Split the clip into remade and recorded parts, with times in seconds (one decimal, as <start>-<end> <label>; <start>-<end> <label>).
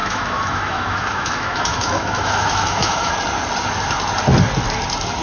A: 0.0-3.1 remade; 3.1-5.2 recorded